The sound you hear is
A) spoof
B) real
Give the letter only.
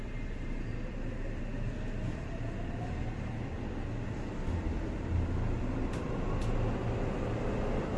B